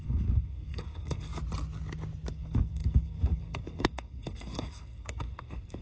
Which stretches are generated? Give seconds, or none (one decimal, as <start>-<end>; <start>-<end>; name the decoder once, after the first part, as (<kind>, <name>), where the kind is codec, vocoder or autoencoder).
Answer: 0.0-1.3 (codec, SNAC); 2.3-5.8